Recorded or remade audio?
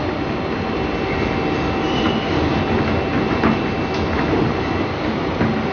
recorded